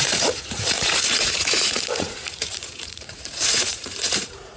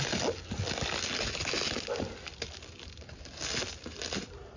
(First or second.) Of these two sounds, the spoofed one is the first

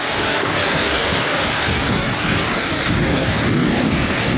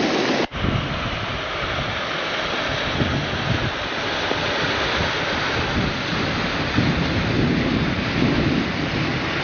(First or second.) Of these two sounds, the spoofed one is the first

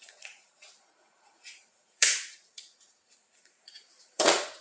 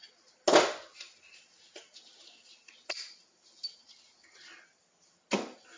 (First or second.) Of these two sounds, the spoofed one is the first